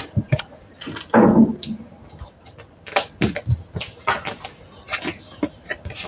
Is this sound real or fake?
fake